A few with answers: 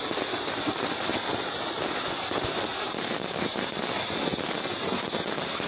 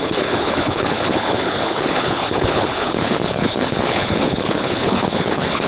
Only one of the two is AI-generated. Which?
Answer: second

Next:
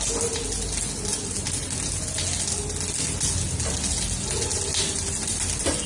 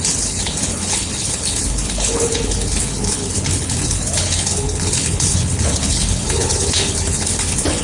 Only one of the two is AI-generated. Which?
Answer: second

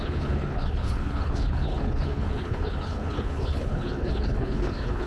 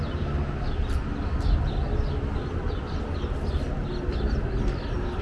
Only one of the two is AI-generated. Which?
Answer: first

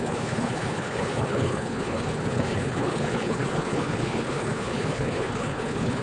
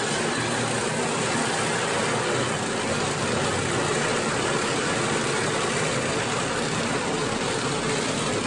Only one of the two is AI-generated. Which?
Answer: first